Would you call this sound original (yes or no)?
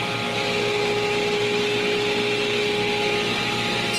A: yes